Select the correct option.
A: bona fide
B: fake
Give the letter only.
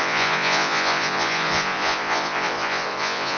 B